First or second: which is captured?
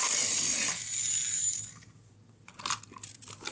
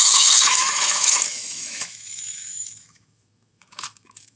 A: first